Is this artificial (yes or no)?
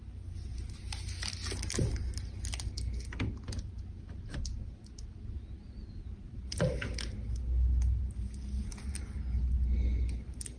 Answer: no